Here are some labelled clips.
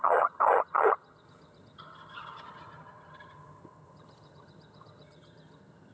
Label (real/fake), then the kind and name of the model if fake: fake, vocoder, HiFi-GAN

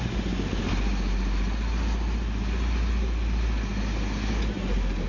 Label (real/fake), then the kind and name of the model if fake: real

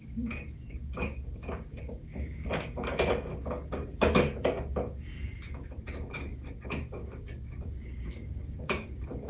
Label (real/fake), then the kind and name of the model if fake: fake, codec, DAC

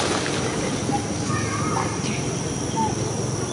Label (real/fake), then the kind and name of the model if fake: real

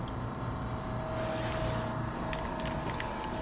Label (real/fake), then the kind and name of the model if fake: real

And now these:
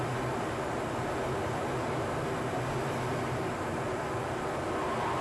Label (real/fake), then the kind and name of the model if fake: real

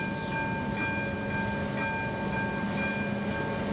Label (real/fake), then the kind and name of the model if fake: real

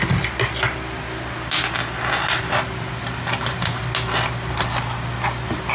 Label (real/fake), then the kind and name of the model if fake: real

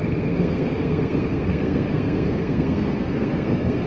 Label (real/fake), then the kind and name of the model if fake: fake, codec, SNAC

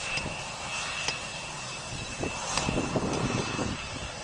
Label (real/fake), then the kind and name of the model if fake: fake, vocoder, BigVGAN v2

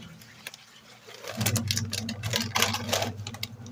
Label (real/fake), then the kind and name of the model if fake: real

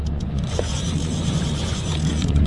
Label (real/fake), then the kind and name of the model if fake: fake, vocoder, Vocos